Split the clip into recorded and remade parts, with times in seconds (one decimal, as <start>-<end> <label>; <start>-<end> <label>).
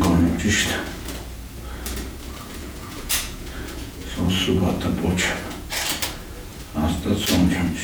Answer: 0.0-2.6 recorded; 2.6-5.7 remade; 5.7-7.8 recorded